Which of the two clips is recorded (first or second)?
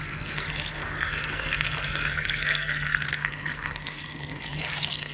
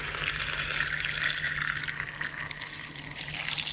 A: second